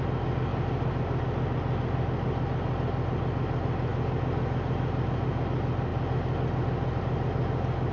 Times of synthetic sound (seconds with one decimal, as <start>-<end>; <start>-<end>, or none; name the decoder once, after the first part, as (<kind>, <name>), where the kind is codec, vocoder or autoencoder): none